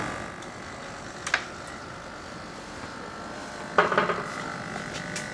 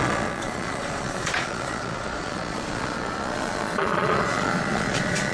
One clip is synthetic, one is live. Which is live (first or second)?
first